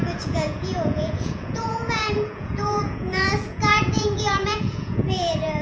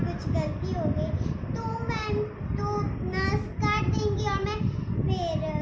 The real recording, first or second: second